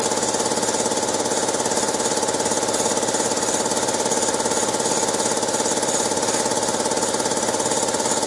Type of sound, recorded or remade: recorded